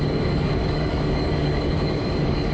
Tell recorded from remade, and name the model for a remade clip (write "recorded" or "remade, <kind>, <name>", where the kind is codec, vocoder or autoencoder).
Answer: remade, codec, DAC